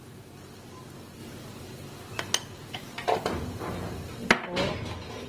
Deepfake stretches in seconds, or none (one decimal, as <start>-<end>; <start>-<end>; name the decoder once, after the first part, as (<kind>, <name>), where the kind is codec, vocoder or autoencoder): none